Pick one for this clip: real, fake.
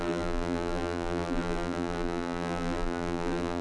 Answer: fake